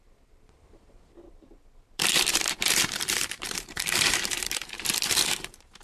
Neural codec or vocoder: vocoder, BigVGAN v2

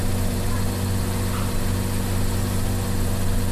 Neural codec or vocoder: none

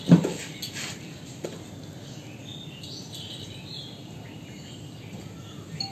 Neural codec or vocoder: none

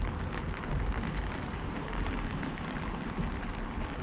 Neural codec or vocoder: none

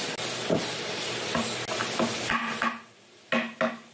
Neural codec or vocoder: none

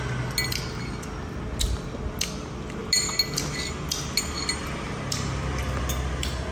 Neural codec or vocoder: none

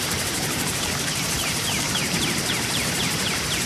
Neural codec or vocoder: vocoder, BigVGAN v2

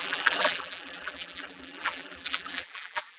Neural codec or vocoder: vocoder, BigVGAN v2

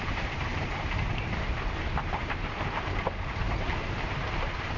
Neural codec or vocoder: vocoder, BigVGAN v2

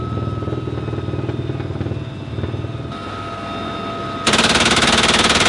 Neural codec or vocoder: none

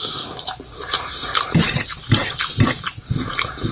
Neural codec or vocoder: vocoder, BigVGAN v2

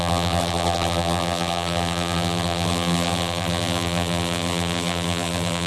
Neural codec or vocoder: vocoder, BigVGAN v2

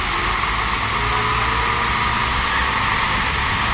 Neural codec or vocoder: none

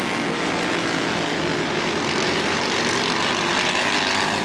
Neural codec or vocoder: none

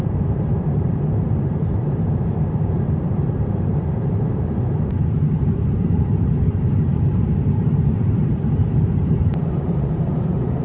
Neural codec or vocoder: vocoder, BigVGAN v2